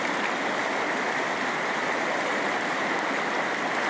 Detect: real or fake real